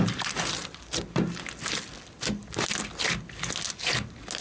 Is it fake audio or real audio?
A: real